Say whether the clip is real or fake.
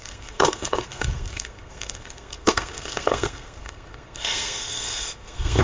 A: fake